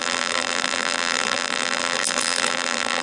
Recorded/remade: remade